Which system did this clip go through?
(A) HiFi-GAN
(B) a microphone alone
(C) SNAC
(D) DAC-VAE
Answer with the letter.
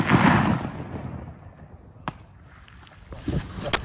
B